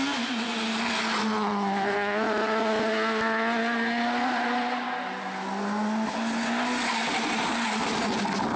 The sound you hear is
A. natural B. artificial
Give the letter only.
A